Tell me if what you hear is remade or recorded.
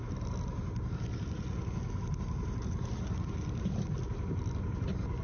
recorded